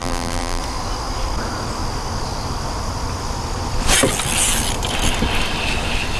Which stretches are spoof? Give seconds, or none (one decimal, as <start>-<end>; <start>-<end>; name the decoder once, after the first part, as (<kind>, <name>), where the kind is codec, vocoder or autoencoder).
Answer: 0.0-0.6 (vocoder, BigVGAN v2)